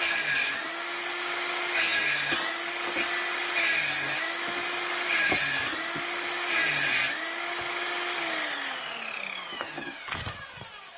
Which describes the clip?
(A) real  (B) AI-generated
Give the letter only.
A